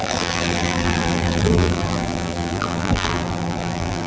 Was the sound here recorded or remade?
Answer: remade